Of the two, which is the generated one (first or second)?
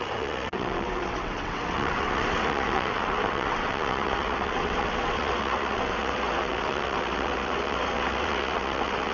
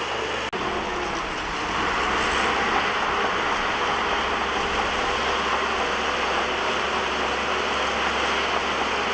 first